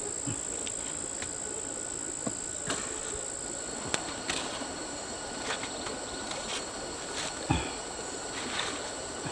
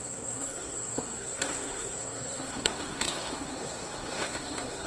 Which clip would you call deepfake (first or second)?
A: second